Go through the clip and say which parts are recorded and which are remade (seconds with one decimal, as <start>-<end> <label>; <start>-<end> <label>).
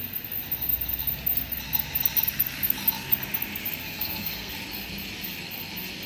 0.0-3.8 recorded; 3.8-4.5 remade; 4.5-6.1 recorded